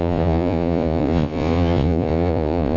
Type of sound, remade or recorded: remade